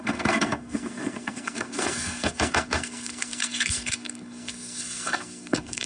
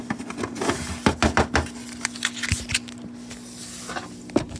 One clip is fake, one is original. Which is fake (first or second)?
first